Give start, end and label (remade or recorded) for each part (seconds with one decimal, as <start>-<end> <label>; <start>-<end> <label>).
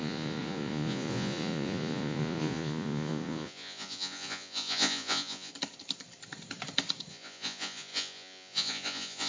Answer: 0.0-5.5 remade; 5.5-7.1 recorded; 7.1-9.3 remade